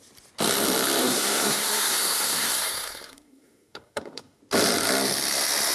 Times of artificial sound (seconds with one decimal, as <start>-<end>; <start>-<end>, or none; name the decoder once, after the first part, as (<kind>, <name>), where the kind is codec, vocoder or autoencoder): 1.0-4.4 (codec, SNAC)